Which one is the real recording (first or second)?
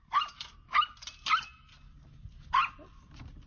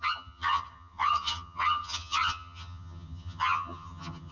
first